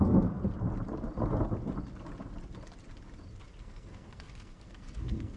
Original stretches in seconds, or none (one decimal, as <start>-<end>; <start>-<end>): 0.4-3.6